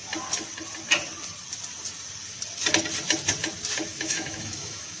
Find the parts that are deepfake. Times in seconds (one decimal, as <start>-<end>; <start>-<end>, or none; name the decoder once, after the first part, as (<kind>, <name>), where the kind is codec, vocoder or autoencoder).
3.9-5.0 (autoencoder, DAC-VAE)